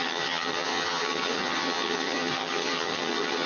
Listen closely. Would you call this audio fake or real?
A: fake